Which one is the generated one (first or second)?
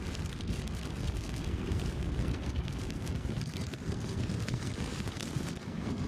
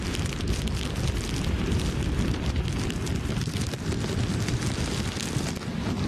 first